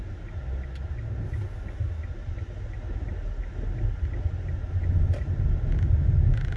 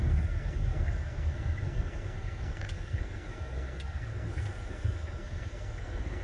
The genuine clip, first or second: first